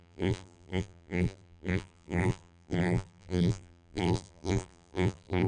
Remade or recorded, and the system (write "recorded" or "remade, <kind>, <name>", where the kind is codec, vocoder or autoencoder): remade, vocoder, BigVGAN v2